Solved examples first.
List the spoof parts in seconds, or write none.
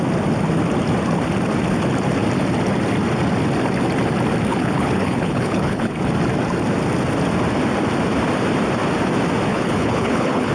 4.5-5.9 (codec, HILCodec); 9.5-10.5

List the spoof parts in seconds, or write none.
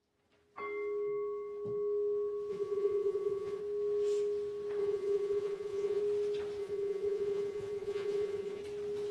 2.5-3.6 (vocoder, Vocos); 4.8-6.0; 6.6-8.6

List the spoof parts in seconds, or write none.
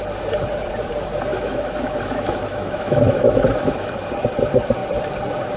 1.3-4.1 (autoencoder, DAC-VAE)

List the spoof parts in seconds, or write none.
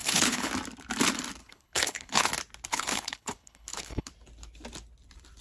0.0-0.5 (codec, HILCodec); 1.4-2.3; 2.7-4.1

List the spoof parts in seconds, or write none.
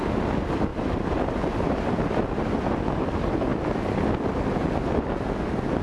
none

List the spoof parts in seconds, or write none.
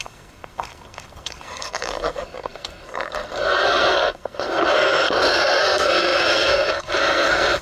0.0-7.6 (codec, SNAC)